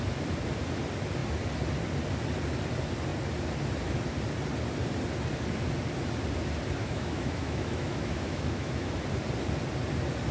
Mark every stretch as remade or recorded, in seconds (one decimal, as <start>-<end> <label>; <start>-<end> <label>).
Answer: 0.0-6.8 recorded; 6.8-8.9 remade; 8.9-10.3 recorded